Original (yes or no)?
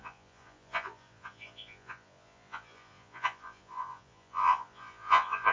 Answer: no